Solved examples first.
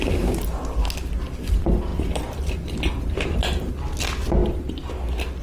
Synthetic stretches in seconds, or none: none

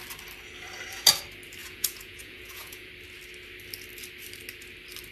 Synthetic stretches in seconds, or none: 1.6-2.9 (vocoder, Vocos)